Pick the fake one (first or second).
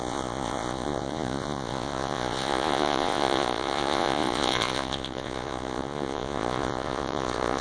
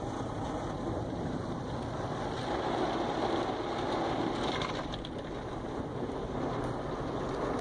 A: first